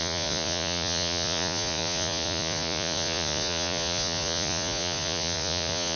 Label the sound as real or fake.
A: fake